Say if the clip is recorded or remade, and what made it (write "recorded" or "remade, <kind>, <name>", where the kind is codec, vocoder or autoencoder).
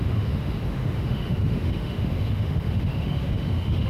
remade, autoencoder, DAC-VAE